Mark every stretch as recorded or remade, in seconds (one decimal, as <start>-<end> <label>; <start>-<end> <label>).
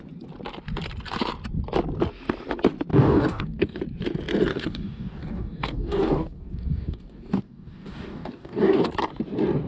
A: 0.0-2.9 recorded; 2.9-3.8 remade; 3.8-4.5 recorded; 4.5-8.9 remade; 8.9-9.7 recorded